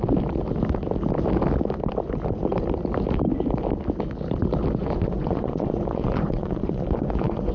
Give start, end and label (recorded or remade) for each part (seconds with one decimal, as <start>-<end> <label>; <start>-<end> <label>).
0.0-4.8 recorded; 4.8-7.5 remade